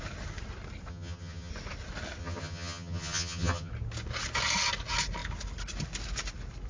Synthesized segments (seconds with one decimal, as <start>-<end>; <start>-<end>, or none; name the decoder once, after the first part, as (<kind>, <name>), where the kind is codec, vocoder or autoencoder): 0.9-1.5 (vocoder, HiFi-GAN); 2.2-3.7

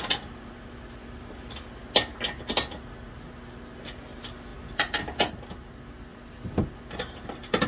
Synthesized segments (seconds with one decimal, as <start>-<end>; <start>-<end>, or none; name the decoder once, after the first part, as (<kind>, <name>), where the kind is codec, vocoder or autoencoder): none

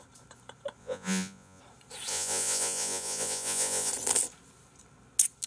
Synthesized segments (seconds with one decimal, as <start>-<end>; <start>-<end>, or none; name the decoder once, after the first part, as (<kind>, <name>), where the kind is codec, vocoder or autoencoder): 0.8-1.6 (vocoder, Vocos); 2.1-3.9

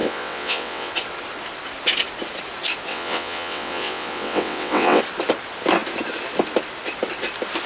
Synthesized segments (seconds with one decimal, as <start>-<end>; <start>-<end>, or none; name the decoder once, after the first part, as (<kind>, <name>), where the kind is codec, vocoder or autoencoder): 0.0-0.9 (vocoder, WaveNeXt); 2.9-5.0

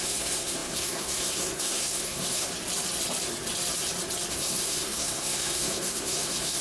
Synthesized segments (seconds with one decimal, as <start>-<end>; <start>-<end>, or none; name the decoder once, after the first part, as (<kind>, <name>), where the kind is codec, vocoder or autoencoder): 0.0-2.5 (codec, SNAC); 4.3-6.6

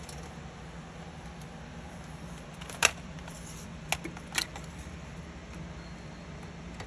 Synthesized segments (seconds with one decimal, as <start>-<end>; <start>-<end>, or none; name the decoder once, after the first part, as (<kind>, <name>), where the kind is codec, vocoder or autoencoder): 1.7-3.9 (vocoder, BigVGAN v2); 4.5-5.1